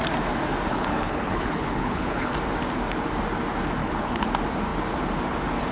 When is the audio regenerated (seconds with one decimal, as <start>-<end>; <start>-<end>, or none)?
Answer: 0.7-2.3; 3.8-4.3